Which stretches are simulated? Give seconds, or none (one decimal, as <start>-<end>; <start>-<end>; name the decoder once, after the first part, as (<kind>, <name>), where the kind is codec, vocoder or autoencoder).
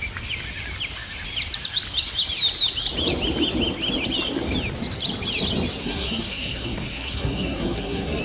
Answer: 5.8-8.2 (codec, SNAC)